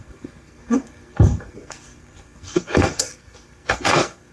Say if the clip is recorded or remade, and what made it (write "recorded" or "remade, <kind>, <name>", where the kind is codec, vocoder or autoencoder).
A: remade, codec, SNAC